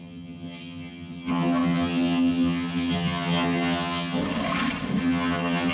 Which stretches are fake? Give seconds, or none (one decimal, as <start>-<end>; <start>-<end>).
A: 0.0-4.2; 5.0-5.7